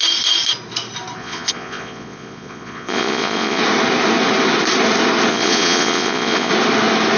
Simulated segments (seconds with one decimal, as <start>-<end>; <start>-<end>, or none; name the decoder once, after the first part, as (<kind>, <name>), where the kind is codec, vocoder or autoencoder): 1.2-3.6 (vocoder, Vocos); 5.3-6.5